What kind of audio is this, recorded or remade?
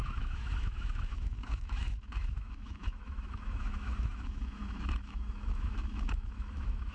remade